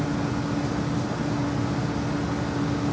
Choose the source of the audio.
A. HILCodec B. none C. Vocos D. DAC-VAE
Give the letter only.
B